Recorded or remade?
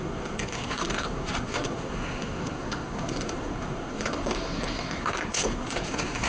remade